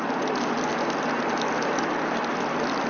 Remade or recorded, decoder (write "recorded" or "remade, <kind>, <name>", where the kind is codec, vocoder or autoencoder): recorded